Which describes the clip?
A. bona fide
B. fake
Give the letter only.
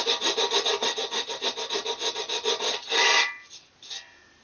A